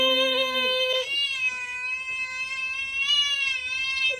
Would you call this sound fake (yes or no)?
no